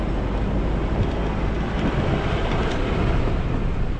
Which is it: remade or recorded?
recorded